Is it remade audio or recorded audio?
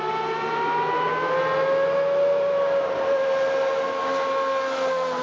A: recorded